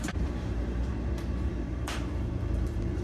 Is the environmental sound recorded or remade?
remade